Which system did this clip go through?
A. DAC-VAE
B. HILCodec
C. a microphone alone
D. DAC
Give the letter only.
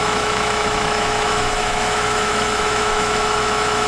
A